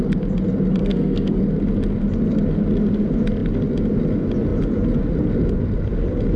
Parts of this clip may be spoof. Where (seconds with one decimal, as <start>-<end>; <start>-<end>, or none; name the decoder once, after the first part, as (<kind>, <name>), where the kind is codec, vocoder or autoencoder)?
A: 0.8-1.4 (codec, SNAC)